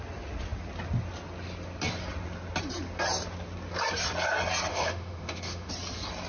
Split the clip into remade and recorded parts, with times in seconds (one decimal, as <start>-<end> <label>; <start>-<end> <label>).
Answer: 0.0-4.7 recorded; 4.7-5.7 remade; 5.7-6.3 recorded